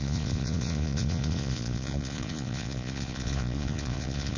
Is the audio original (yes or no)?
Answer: no